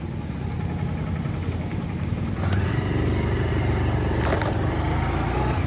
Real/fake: real